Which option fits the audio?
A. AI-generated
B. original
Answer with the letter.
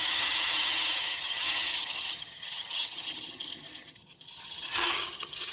A